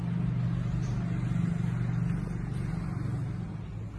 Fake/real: real